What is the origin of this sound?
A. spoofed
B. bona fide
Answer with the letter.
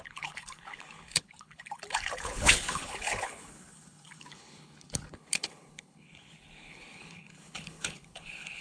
A